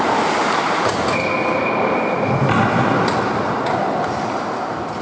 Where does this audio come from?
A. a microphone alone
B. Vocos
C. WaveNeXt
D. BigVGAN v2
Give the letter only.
A